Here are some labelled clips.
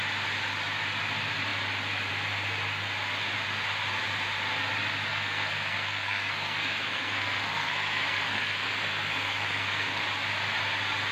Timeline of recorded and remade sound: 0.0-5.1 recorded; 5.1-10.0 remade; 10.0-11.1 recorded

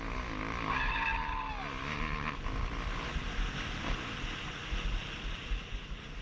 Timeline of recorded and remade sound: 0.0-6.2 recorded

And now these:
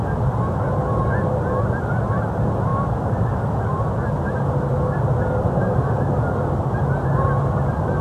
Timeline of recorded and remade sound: 0.0-8.0 recorded

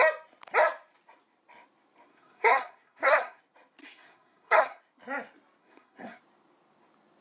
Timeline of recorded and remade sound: 0.0-2.1 recorded; 2.1-3.4 remade; 3.4-3.8 recorded; 3.8-4.8 remade; 4.8-5.6 recorded; 5.6-6.2 remade; 6.2-7.2 recorded

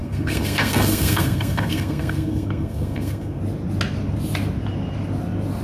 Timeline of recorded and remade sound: 0.0-3.4 remade; 3.4-5.6 recorded

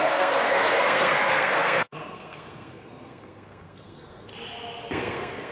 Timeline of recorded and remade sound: 0.0-4.3 remade; 4.3-4.9 recorded; 4.9-5.5 remade

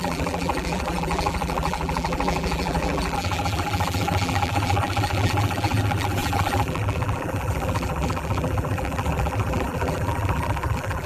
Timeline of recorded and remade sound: 0.0-11.1 remade

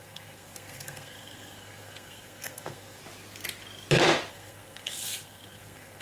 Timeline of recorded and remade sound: 0.0-3.0 remade; 3.0-4.3 recorded; 4.3-6.0 remade